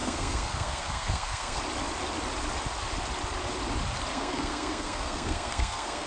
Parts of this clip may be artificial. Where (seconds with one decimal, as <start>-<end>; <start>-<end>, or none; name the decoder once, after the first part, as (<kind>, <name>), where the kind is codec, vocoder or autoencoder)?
0.0-1.6 (codec, SNAC); 4.1-6.1